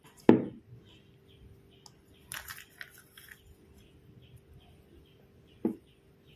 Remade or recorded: recorded